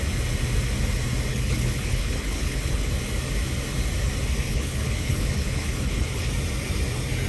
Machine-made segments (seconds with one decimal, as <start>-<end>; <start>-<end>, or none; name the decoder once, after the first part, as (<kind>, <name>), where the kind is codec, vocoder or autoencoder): 1.3-2.9 (codec, HILCodec); 4.5-6.3